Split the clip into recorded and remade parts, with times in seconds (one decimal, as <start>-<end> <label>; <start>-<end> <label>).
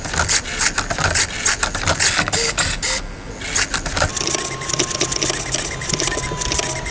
0.0-6.9 recorded